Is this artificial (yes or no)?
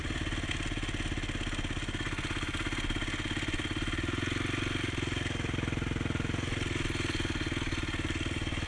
no